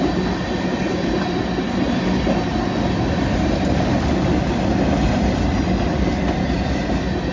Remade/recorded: recorded